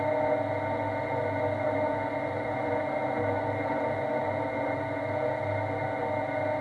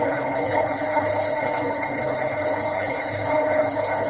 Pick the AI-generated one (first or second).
second